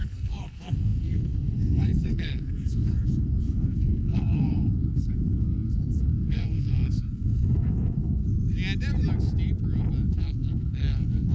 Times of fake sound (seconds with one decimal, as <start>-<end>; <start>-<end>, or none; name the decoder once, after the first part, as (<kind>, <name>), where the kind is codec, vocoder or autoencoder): 0.0-8.2 (codec, SNAC); 10.1-11.3